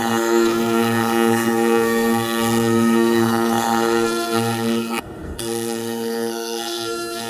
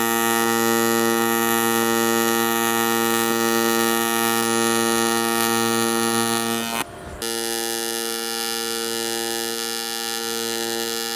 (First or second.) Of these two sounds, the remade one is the first